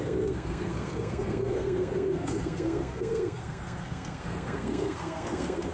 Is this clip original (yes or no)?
no